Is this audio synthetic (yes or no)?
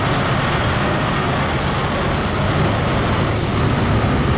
no